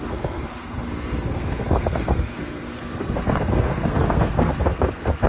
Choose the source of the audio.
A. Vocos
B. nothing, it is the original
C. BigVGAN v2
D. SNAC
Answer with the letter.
D